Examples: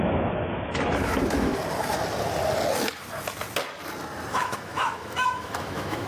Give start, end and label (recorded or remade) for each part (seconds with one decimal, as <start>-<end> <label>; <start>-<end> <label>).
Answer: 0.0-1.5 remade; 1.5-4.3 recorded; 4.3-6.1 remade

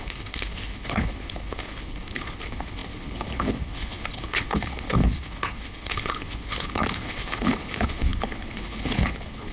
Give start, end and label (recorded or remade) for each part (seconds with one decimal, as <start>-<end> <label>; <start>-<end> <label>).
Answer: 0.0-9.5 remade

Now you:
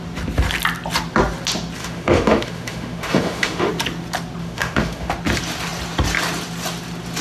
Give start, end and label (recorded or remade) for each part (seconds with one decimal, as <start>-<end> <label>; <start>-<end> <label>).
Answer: 0.0-1.8 recorded; 1.8-3.7 remade; 3.7-4.4 recorded; 4.4-5.1 remade; 5.1-7.2 recorded

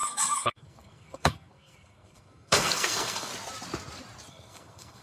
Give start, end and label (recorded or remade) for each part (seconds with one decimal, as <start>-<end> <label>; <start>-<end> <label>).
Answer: 0.0-3.3 remade; 3.3-4.3 recorded; 4.3-5.0 remade